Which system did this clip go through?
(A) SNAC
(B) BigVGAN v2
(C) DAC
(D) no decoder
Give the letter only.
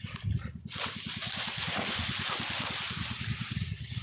D